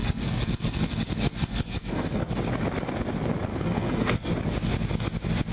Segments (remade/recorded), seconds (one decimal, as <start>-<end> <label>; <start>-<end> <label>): 0.0-2.3 remade; 2.3-3.5 recorded; 3.5-4.3 remade; 4.3-5.5 recorded